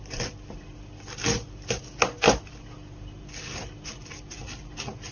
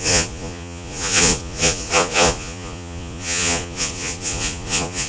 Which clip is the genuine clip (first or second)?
first